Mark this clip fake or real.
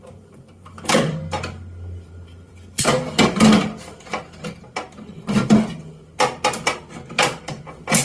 real